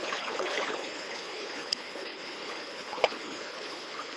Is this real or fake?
fake